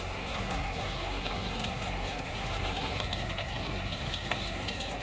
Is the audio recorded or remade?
remade